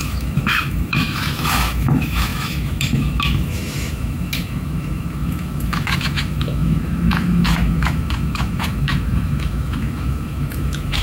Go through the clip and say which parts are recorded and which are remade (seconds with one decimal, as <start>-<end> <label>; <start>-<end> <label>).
0.0-11.0 remade